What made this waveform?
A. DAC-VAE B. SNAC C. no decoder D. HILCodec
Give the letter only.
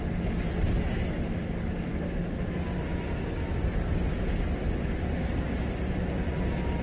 C